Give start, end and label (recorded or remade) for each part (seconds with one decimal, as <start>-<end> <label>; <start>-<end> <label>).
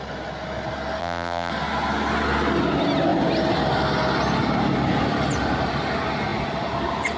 0.0-1.0 recorded; 1.0-1.5 remade; 1.5-7.2 recorded